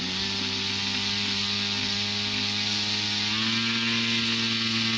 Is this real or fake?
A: real